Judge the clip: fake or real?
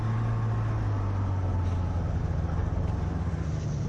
real